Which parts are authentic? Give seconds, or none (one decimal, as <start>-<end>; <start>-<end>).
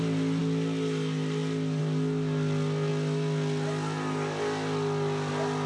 0.0-5.7